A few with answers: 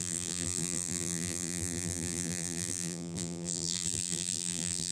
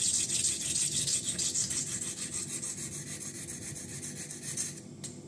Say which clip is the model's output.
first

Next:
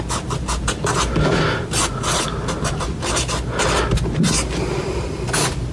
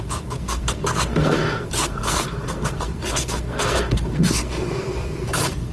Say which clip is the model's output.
second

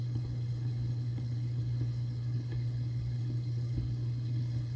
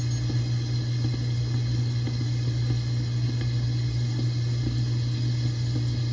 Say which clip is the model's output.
first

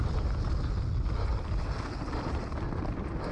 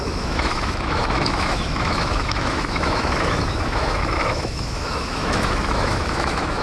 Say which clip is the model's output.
second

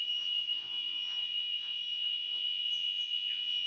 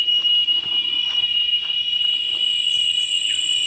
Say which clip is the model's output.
first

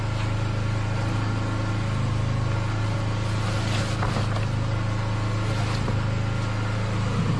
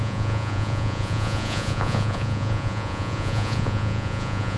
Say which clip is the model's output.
second